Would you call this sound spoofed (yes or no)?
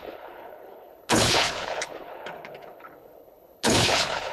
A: yes